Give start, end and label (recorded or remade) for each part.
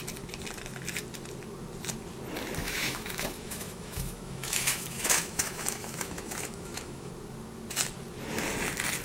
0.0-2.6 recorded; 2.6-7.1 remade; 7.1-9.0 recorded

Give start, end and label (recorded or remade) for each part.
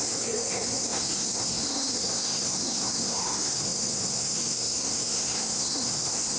0.0-6.4 remade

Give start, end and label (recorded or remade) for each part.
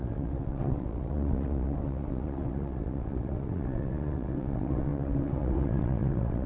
0.0-6.5 remade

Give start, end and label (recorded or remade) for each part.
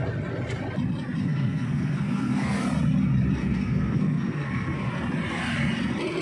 0.0-1.2 recorded; 1.2-2.6 remade; 2.6-3.4 recorded; 3.4-4.9 remade; 4.9-6.2 recorded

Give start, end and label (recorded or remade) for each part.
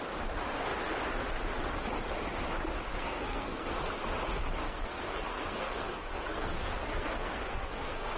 0.0-2.9 recorded; 2.9-3.8 remade; 3.8-4.6 recorded; 4.6-8.2 remade